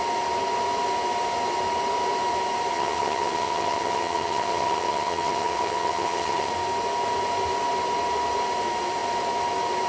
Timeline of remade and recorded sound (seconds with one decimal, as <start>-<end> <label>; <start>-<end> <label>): 0.0-2.7 recorded; 2.7-6.5 remade; 6.5-9.9 recorded